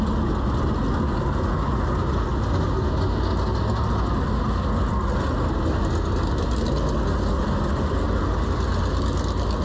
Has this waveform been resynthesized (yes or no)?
no